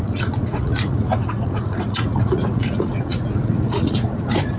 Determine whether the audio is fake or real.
fake